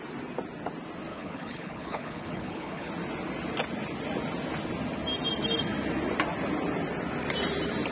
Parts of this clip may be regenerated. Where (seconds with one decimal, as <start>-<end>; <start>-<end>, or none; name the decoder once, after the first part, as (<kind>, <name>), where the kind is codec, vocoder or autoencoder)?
1.1-2.9 (codec, HILCodec)